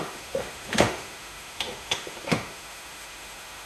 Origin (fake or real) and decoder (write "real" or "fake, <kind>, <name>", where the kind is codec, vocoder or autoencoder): fake, autoencoder, DAC-VAE